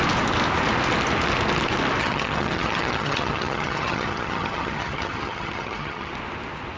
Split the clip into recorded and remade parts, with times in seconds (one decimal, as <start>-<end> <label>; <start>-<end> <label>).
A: 0.0-2.0 recorded; 2.0-6.1 remade; 6.1-6.8 recorded